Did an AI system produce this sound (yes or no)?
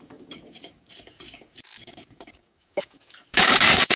yes